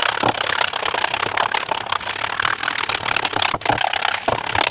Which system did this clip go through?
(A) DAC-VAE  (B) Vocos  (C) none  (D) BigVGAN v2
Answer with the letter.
C